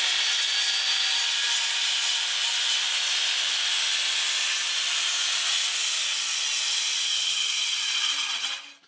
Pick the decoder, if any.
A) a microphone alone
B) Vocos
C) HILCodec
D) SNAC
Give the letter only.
A